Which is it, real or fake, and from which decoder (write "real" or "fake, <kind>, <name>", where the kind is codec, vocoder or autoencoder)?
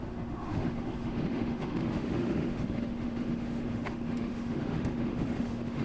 fake, autoencoder, DAC-VAE